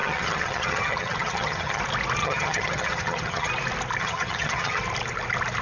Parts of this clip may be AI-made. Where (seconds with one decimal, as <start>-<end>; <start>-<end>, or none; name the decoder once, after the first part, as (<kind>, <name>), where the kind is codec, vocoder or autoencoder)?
0.0-1.8 (vocoder, HiFi-GAN); 2.2-3.5; 4.0-4.8